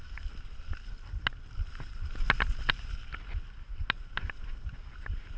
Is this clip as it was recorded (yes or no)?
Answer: yes